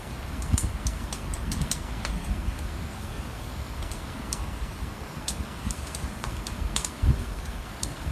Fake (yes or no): yes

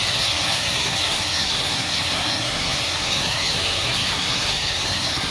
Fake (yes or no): yes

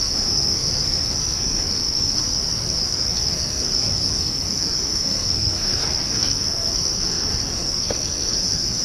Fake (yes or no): yes